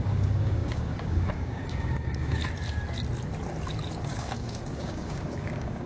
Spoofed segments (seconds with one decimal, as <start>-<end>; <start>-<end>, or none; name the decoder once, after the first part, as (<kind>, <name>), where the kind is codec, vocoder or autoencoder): 0.0-2.4 (codec, DAC); 4.0-5.9